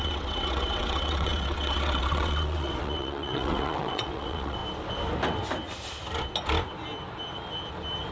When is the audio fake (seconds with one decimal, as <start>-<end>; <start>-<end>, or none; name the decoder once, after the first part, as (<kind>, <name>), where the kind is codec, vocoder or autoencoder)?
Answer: 0.0-4.6 (vocoder, WaveNeXt)